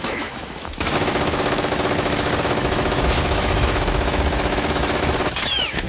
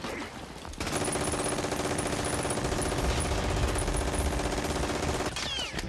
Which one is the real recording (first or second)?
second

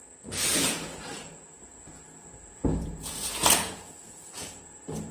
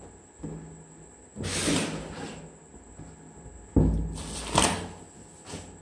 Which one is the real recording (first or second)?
second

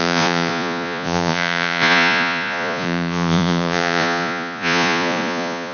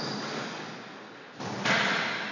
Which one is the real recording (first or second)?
second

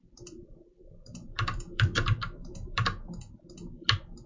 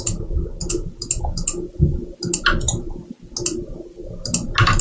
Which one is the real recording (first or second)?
second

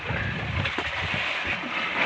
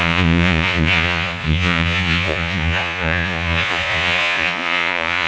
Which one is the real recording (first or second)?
first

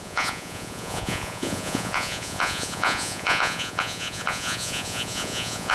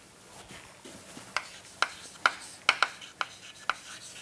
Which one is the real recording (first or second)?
second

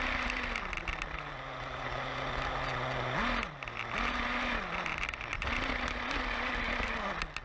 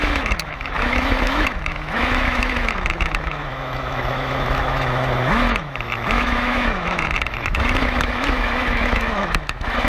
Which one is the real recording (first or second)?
first